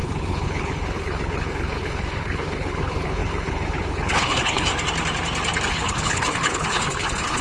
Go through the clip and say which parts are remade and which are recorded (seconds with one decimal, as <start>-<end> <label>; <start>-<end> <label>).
0.0-4.7 remade; 4.7-5.7 recorded; 5.7-7.4 remade